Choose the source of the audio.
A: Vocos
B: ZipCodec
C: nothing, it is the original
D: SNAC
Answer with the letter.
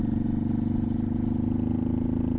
C